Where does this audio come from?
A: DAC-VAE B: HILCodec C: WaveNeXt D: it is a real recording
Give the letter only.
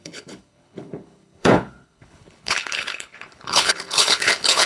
B